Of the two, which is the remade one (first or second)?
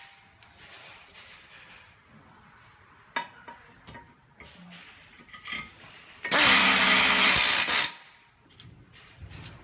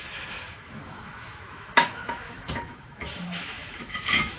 second